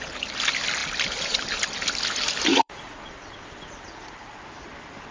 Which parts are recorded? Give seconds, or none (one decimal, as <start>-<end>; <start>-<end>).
0.0-2.5; 3.1-3.9; 4.4-5.1